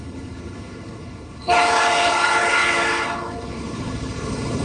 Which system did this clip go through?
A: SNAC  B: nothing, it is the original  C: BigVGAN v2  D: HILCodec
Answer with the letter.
D